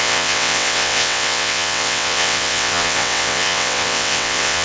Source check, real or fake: fake